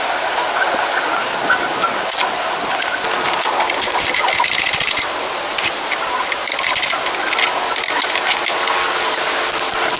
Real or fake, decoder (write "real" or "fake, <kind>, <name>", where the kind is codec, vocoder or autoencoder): real